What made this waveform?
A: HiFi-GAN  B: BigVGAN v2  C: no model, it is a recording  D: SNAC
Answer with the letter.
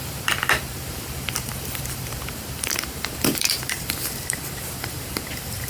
B